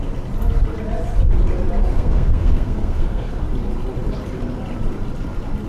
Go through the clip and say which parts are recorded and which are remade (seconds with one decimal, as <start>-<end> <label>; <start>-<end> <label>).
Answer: 0.0-1.9 recorded; 1.9-3.4 remade; 3.4-5.7 recorded